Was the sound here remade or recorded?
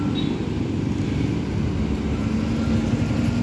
recorded